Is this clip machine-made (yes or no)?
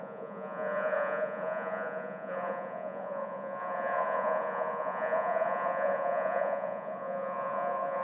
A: yes